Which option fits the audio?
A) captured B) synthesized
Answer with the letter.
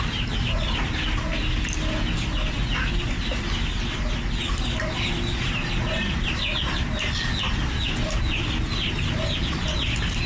A